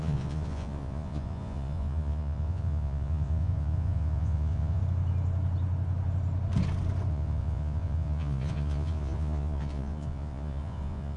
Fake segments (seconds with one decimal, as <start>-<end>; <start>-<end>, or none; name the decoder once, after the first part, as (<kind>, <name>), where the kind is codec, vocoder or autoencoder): 0.0-4.8 (vocoder, Vocos); 7.1-11.2